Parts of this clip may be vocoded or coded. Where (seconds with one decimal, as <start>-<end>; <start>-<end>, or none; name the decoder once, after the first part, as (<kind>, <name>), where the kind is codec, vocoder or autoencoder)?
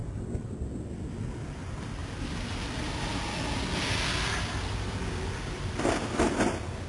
none